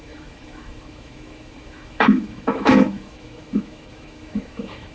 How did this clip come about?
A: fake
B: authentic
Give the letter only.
A